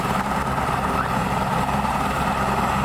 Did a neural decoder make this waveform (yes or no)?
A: yes